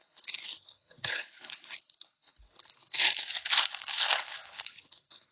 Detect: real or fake fake